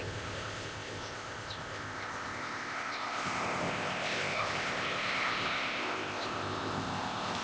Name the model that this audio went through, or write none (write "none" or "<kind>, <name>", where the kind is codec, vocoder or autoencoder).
codec, ZipCodec